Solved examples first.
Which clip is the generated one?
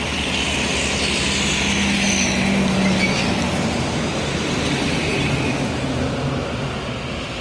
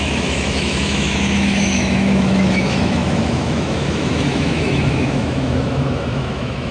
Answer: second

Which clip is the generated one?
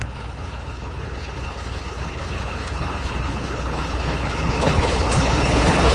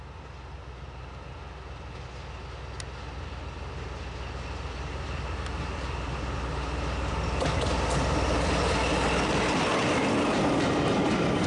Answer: first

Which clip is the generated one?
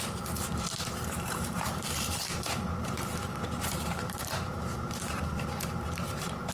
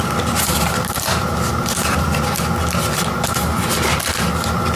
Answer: first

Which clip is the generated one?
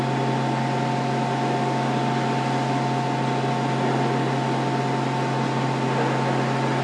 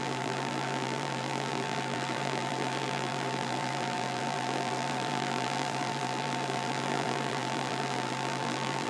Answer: second